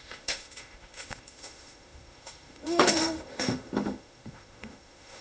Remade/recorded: remade